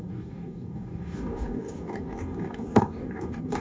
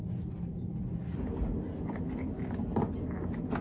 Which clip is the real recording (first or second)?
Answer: second